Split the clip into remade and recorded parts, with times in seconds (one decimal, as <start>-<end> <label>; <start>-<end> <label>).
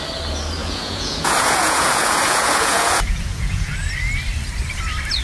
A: 0.0-0.6 recorded; 0.6-3.7 remade; 3.7-5.2 recorded